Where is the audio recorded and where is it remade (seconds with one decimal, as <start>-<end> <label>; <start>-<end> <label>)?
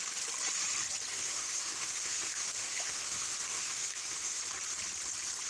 0.0-1.1 recorded; 1.1-4.4 remade; 4.4-5.5 recorded